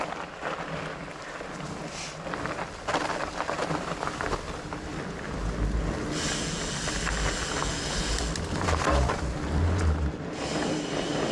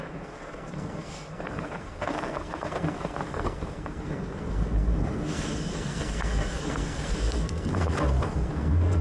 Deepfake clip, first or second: second